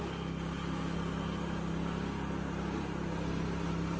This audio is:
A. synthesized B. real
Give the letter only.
B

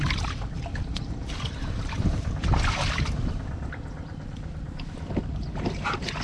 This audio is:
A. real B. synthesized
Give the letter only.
B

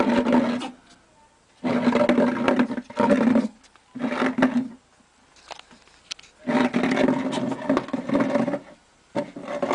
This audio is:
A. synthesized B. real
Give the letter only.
B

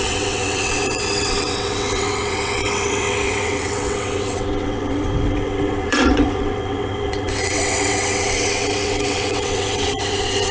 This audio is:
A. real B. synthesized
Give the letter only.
B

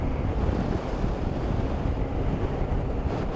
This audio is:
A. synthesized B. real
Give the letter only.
A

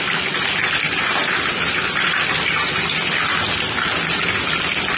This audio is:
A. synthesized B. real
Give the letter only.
B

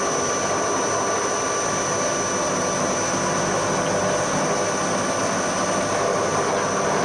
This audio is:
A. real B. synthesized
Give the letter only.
A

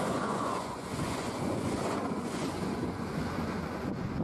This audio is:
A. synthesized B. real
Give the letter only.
A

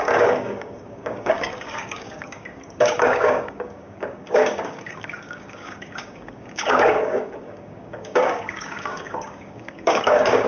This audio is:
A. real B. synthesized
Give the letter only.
B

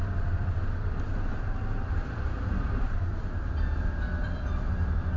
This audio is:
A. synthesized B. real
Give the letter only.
A